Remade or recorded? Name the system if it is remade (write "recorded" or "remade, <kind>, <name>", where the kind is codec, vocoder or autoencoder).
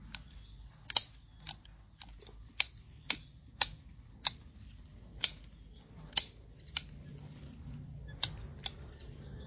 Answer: recorded